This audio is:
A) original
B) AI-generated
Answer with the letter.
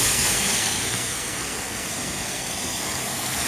B